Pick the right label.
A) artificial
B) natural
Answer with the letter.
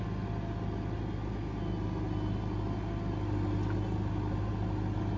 B